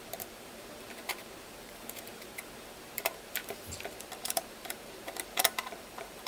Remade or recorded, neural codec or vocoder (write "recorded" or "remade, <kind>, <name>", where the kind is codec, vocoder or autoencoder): remade, vocoder, BigVGAN v2